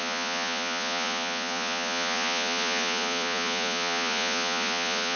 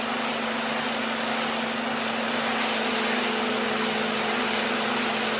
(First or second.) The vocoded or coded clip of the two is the first